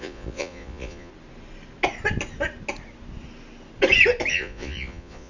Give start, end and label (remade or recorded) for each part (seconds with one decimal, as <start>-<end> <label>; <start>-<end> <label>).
0.0-1.1 remade; 1.1-4.3 recorded; 4.3-5.3 remade

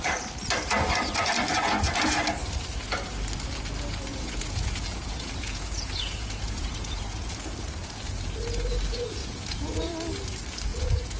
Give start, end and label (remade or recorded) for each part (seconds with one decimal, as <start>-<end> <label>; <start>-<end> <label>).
0.0-4.1 recorded; 4.1-7.3 remade; 7.3-9.2 recorded; 9.2-9.9 remade; 9.9-10.7 recorded; 10.7-11.2 remade

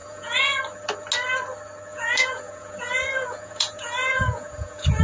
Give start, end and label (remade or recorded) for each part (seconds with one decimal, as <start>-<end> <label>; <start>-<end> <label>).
0.0-0.6 remade; 0.6-1.9 recorded; 1.9-5.0 remade

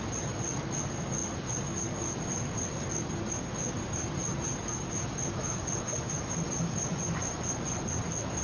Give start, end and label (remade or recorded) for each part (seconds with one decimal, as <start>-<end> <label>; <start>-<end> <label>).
0.0-6.9 recorded; 6.9-7.8 remade; 7.8-8.4 recorded

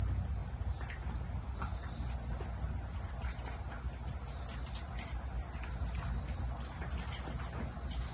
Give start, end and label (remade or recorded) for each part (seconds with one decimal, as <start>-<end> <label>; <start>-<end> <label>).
0.0-8.1 recorded

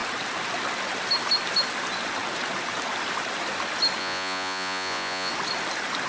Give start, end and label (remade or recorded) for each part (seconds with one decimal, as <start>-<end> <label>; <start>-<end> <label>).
0.0-4.0 recorded; 4.0-5.3 remade; 5.3-6.1 recorded

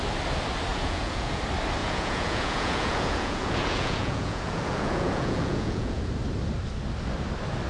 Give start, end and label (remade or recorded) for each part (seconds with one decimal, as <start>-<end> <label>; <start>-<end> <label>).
0.0-0.7 recorded; 0.7-1.4 remade; 1.4-1.8 recorded; 1.8-6.0 remade; 6.0-7.7 recorded

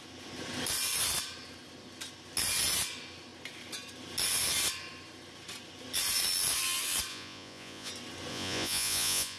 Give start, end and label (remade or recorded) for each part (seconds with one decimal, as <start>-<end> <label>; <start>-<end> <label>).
0.0-7.1 recorded; 7.1-7.9 remade; 7.9-8.3 recorded; 8.3-9.4 remade